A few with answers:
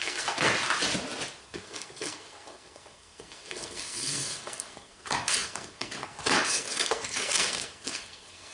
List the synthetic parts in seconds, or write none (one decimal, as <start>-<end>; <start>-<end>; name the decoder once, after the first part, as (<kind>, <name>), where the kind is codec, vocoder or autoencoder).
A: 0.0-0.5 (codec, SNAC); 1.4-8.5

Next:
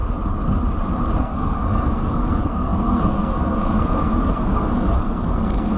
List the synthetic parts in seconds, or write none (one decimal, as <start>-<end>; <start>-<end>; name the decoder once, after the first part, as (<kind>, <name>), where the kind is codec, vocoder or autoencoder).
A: 1.2-5.8 (codec, SNAC)

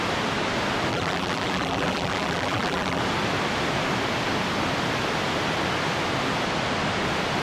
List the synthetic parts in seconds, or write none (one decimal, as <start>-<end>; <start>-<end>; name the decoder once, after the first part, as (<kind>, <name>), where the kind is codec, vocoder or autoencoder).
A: 0.9-3.0 (vocoder, BigVGAN v2)